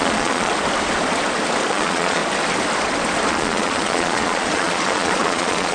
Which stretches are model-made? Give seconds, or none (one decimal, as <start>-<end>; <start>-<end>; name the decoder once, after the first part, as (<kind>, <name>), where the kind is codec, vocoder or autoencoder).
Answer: 0.0-0.5 (vocoder, Vocos); 1.7-2.2; 3.3-5.7